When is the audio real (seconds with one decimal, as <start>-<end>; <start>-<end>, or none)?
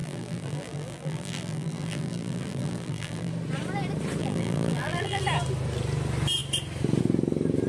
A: 3.3-4.2; 5.2-7.7